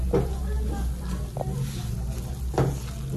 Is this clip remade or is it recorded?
recorded